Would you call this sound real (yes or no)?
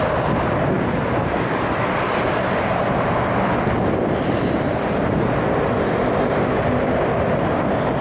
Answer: yes